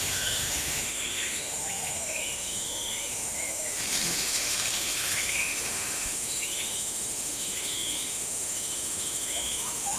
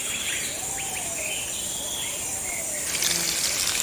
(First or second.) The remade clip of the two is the first